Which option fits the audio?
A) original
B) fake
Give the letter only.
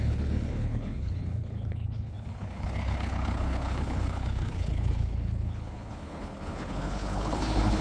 B